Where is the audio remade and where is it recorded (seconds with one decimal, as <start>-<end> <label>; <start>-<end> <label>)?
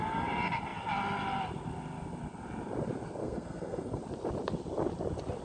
0.0-3.2 recorded; 3.2-4.0 remade; 4.0-5.4 recorded